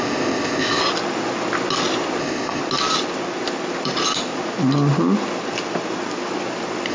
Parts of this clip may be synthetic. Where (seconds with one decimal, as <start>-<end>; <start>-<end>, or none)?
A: 0.0-0.8; 2.2-2.6